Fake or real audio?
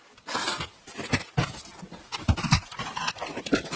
real